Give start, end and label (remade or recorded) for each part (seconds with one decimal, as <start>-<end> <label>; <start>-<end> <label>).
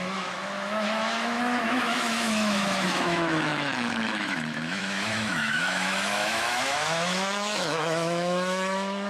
0.0-9.1 remade